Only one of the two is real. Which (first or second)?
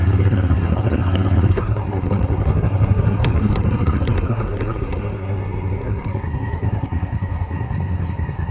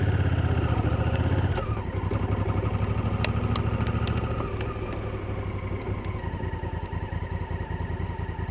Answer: second